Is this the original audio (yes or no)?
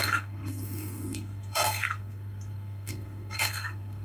no